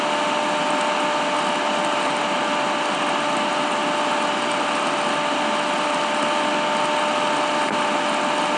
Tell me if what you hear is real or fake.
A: real